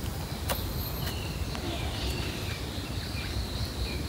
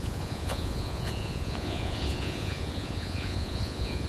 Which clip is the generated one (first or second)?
second